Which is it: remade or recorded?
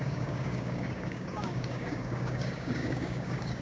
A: remade